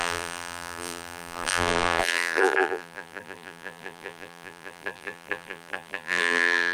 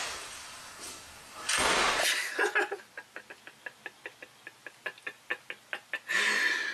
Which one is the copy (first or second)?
first